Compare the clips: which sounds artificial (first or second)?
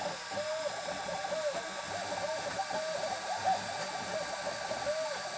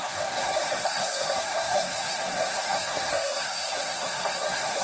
second